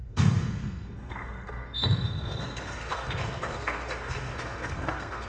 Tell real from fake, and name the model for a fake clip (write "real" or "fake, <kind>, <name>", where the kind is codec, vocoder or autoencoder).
fake, codec, SNAC